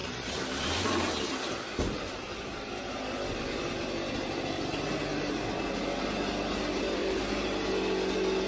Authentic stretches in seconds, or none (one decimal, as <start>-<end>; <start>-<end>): 3.7-7.0; 7.7-8.5